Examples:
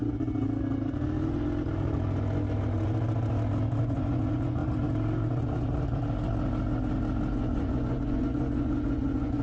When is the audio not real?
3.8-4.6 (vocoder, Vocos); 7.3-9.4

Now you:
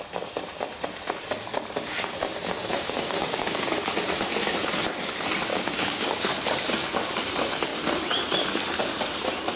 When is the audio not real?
2.7-3.6 (codec, DAC); 5.5-6.3

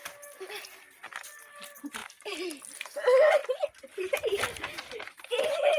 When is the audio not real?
none

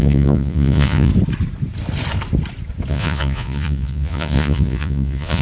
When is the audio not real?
0.0-1.1 (vocoder, Vocos); 2.9-5.4

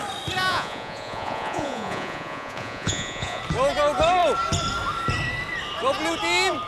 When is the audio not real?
0.5-3.4 (vocoder, Vocos)